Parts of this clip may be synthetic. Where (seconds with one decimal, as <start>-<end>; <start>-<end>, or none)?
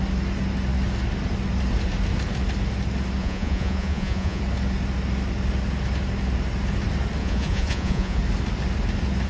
3.2-4.4; 7.2-8.2